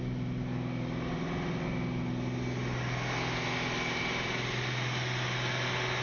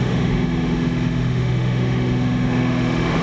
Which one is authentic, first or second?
first